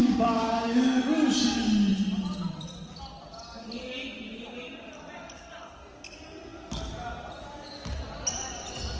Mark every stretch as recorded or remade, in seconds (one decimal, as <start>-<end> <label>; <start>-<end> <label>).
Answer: 0.0-1.0 remade; 1.0-9.0 recorded